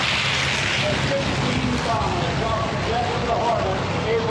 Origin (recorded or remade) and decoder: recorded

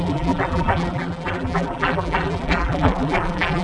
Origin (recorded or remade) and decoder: remade, vocoder, BigVGAN v2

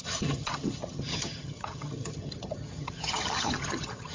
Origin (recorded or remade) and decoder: remade, vocoder, HiFi-GAN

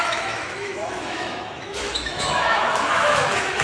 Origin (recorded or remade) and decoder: remade, autoencoder, DAC-VAE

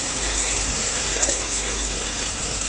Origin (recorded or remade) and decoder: remade, codec, SNAC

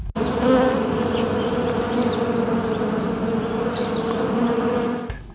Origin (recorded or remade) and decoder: recorded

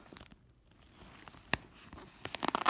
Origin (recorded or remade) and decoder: recorded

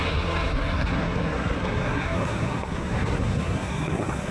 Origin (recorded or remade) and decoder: remade, codec, SNAC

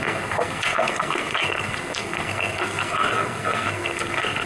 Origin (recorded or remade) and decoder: remade, codec, SNAC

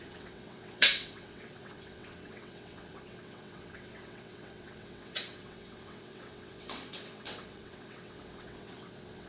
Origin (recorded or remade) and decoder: remade, vocoder, WaveNeXt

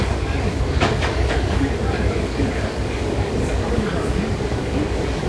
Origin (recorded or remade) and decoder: remade, codec, DAC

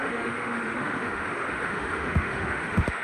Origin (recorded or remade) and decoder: remade, autoencoder, DAC-VAE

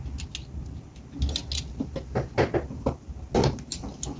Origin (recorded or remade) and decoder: recorded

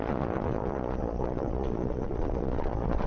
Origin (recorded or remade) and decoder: remade, vocoder, Vocos